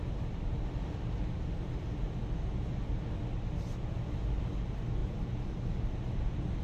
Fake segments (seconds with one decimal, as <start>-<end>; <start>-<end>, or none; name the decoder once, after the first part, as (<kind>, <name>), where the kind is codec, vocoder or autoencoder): 5.0-6.6 (vocoder, BigVGAN v2)